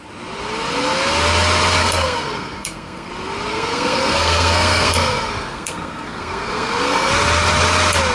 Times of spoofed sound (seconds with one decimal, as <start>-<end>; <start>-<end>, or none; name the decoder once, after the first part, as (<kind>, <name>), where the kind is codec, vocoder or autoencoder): 1.8-3.1 (codec, SNAC); 3.5-7.1